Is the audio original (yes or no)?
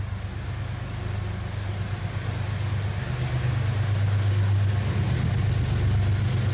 yes